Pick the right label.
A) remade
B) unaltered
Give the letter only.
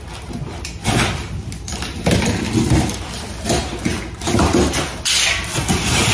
B